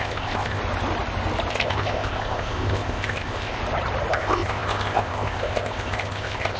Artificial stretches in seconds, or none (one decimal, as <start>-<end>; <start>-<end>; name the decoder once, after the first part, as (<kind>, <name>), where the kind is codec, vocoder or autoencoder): 0.0-0.6 (codec, ZipCodec); 1.5-3.6; 4.1-6.6

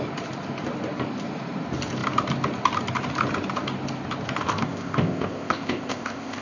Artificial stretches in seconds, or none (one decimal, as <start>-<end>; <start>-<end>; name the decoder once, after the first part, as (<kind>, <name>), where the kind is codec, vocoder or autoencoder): 4.4-6.4 (codec, ZipCodec)

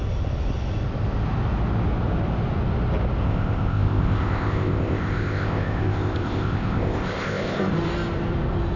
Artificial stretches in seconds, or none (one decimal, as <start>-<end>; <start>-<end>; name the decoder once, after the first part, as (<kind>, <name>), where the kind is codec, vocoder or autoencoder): 3.2-7.7 (codec, ZipCodec)

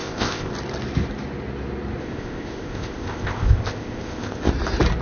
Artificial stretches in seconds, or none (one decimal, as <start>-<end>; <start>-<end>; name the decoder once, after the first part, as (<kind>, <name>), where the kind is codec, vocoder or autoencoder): 0.0-0.5 (codec, ZipCodec); 2.0-4.5